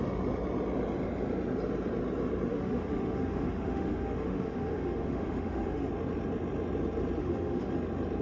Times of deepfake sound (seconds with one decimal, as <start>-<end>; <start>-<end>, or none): 2.5-5.9; 7.2-7.7